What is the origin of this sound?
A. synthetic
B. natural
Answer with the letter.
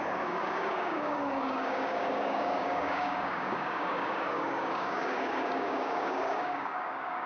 A